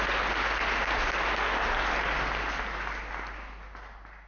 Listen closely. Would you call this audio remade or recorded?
recorded